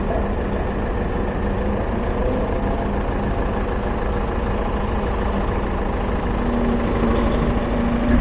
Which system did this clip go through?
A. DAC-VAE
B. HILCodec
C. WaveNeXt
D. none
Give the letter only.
D